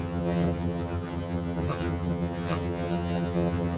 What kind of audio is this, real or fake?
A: fake